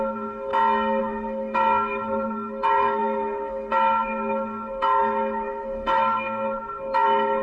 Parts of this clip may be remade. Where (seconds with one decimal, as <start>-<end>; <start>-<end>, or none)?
0.0-0.5; 1.0-7.4